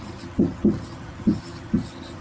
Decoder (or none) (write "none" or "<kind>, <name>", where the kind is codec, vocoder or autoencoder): vocoder, HiFi-GAN